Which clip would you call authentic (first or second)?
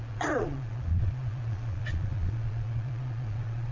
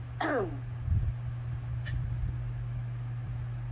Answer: second